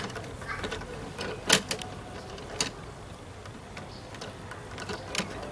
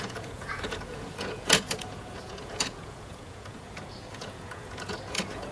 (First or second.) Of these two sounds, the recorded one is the first